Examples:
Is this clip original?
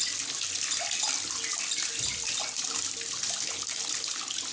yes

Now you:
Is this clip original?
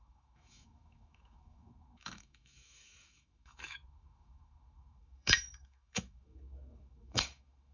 no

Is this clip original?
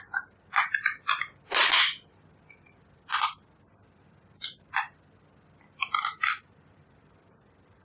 yes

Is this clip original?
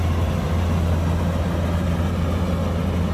yes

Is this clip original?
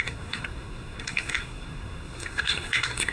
no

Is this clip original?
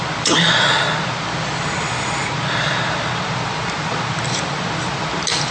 yes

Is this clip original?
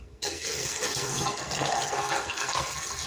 no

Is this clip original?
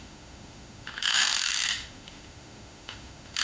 no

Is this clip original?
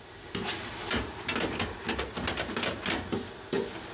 yes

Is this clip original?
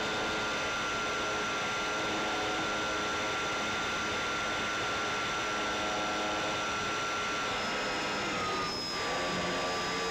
yes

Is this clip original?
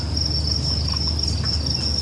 yes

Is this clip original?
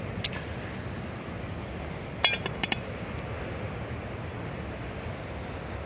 yes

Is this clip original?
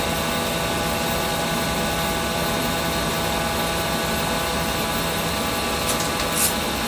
yes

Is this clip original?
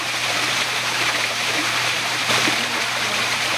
no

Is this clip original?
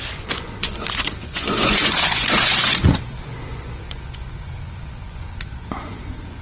no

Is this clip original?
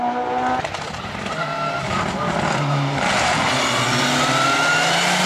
yes